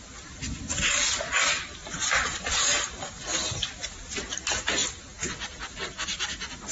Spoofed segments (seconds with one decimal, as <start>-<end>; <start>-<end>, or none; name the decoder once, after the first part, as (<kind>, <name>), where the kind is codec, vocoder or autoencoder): 1.8-4.1 (vocoder, BigVGAN v2)